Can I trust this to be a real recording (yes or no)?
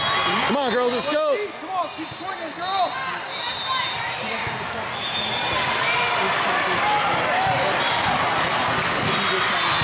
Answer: yes